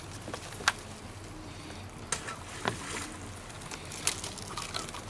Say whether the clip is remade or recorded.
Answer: recorded